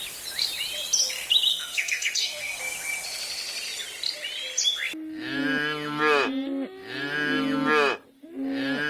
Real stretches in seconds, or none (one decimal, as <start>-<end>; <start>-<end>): 0.0-1.5; 2.6-8.9